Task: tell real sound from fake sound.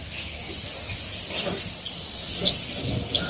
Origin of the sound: real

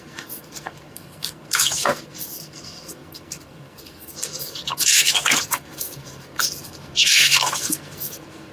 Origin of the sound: fake